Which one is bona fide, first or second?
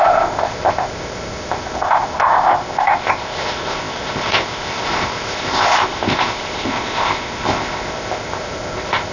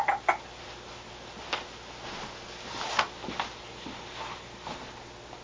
second